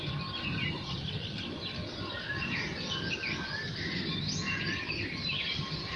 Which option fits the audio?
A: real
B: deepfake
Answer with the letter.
A